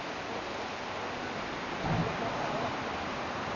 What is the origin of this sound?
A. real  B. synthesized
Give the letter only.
A